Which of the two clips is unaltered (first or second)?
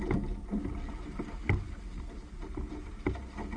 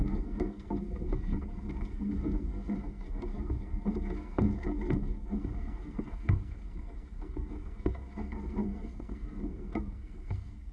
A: first